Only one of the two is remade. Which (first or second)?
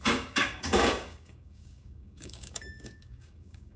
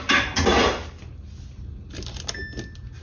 first